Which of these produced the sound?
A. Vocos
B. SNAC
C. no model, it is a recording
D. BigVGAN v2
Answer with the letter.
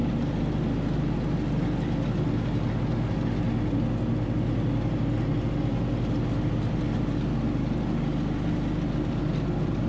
C